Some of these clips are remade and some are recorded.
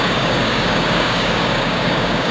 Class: remade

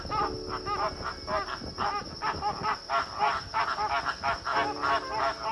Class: recorded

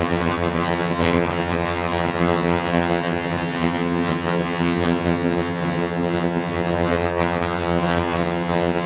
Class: remade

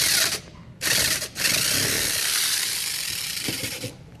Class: remade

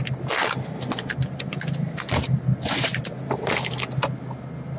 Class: recorded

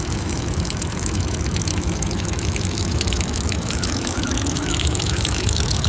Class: remade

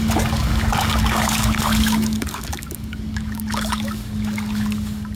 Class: remade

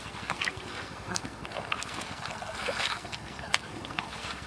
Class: remade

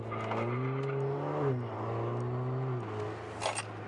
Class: recorded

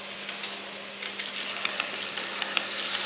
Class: recorded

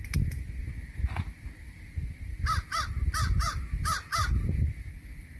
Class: recorded